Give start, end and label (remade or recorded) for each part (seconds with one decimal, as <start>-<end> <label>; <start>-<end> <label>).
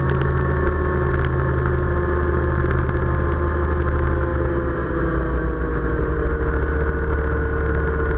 0.0-8.2 recorded